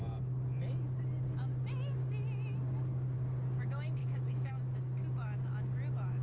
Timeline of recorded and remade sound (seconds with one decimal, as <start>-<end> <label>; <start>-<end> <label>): 0.0-4.0 recorded; 4.0-4.5 remade; 4.5-6.2 recorded